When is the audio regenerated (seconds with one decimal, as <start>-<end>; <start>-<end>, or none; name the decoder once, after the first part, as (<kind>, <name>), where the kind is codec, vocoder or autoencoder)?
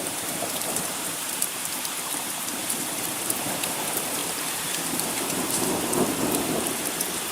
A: 0.0-7.3 (vocoder, BigVGAN v2)